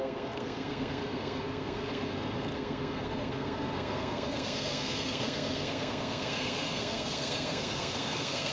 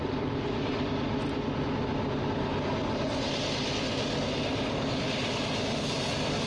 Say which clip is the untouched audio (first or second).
second